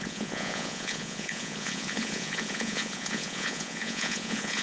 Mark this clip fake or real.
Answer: fake